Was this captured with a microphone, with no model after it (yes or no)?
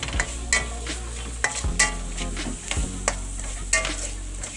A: yes